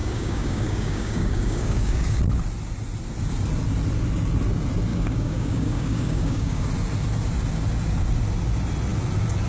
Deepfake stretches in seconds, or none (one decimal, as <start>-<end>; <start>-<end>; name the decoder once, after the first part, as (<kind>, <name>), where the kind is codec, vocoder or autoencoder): 0.0-2.2 (codec, DAC); 4.9-6.7